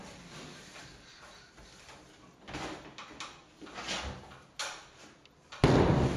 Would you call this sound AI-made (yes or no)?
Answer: no